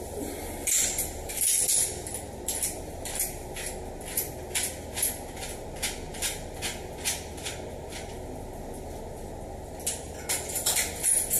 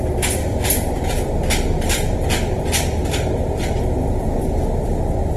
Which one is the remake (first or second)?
second